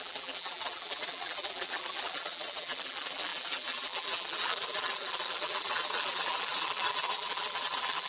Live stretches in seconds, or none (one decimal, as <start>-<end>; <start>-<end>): none